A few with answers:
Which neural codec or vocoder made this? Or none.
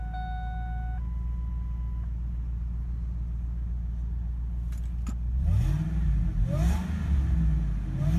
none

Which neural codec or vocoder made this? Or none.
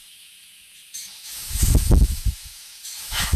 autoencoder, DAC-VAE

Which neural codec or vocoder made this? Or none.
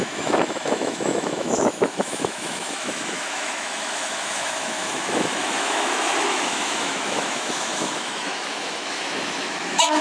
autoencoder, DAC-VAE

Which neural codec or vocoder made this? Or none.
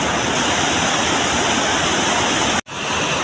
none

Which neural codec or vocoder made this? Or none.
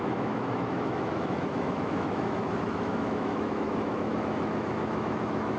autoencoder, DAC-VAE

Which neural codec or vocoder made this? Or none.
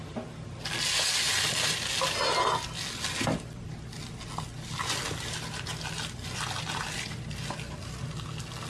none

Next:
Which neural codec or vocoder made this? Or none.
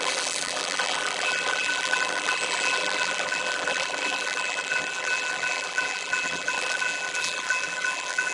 vocoder, BigVGAN v2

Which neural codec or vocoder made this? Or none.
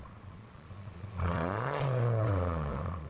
vocoder, Vocos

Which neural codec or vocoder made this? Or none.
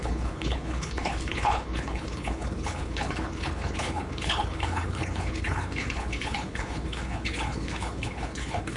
codec, HILCodec